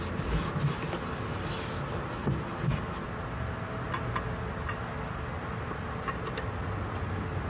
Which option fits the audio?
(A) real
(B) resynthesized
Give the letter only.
A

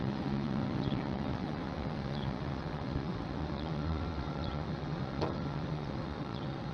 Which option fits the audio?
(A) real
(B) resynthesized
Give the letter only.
B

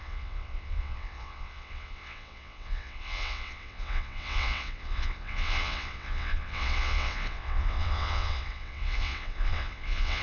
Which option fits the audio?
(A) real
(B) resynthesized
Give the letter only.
B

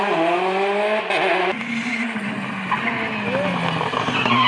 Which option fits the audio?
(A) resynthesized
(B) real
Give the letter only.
B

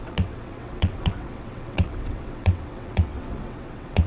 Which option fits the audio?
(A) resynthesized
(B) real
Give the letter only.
A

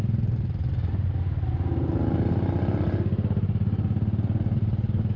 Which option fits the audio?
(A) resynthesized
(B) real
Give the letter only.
B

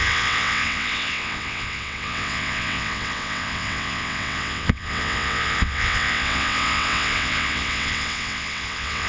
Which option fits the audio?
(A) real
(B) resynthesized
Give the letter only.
B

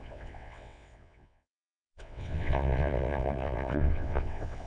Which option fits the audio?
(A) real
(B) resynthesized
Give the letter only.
B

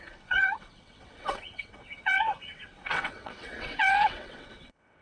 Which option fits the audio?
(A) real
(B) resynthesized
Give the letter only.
B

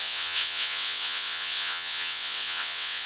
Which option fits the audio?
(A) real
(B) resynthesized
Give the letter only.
B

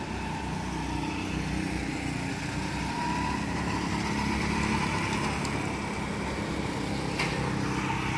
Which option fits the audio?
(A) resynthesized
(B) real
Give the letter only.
B